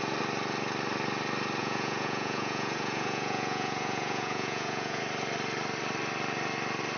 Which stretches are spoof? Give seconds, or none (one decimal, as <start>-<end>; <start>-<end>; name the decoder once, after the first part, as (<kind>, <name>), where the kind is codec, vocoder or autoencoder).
1.6-5.0 (vocoder, Vocos)